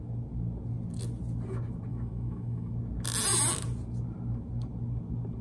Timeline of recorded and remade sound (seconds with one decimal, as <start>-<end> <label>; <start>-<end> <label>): 0.0-1.9 recorded; 1.9-2.7 remade; 2.7-5.4 recorded